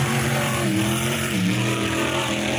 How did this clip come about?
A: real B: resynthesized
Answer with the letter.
B